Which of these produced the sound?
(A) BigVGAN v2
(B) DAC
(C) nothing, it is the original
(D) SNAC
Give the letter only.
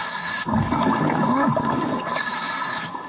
B